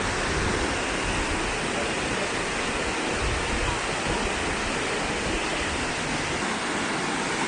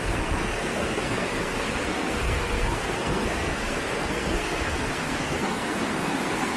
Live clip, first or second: first